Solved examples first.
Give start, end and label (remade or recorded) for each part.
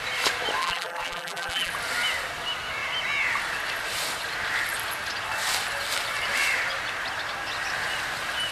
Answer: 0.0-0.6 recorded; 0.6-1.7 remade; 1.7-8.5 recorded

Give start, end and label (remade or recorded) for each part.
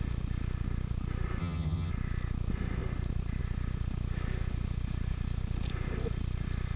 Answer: 0.0-1.4 recorded; 1.4-1.9 remade; 1.9-6.8 recorded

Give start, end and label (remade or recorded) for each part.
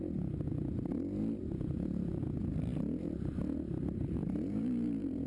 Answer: 0.0-0.5 recorded; 0.5-2.2 remade; 2.2-2.7 recorded; 2.7-5.3 remade